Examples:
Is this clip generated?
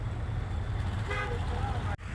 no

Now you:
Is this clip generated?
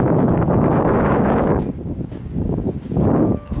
yes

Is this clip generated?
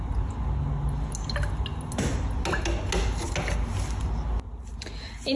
no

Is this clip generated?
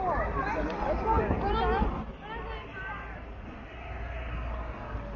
no